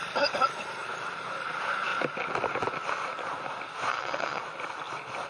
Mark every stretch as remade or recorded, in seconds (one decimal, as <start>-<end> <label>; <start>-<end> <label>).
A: 0.0-3.9 recorded; 3.9-4.4 remade; 4.4-5.3 recorded